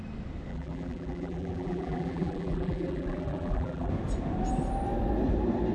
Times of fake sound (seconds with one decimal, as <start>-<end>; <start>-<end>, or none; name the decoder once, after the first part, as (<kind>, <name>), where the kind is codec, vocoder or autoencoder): 0.5-3.9 (vocoder, BigVGAN v2)